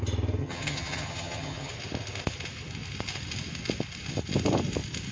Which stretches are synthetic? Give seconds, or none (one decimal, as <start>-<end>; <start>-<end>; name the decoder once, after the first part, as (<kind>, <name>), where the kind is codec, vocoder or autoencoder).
0.4-1.7 (vocoder, HiFi-GAN)